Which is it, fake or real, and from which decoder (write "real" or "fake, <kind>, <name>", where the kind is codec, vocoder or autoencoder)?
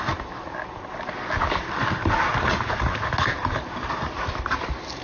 real